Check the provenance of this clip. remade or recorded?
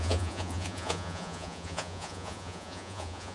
remade